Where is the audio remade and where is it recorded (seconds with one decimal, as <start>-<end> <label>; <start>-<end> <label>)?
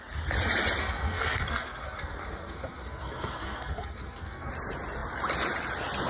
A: 0.0-0.8 recorded; 0.8-4.5 remade; 4.5-6.1 recorded